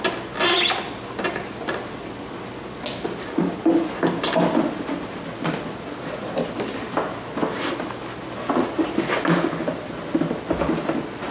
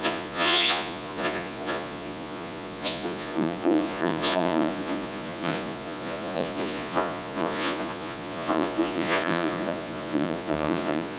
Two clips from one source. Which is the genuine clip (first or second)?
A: first